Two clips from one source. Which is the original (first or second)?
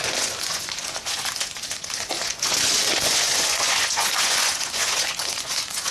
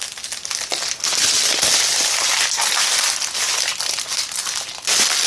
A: second